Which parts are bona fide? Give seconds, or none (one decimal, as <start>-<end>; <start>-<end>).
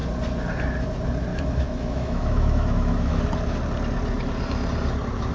0.0-1.3; 3.2-5.3